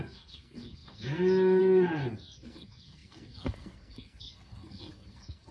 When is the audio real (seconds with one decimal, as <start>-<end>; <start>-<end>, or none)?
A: none